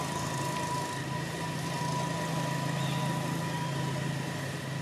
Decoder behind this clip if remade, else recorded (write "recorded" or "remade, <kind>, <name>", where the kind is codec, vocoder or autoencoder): recorded